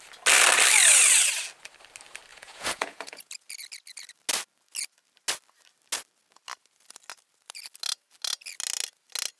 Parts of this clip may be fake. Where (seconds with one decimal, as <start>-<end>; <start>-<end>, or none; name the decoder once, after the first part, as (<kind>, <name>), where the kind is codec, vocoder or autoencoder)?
2.3-3.3 (vocoder, Vocos)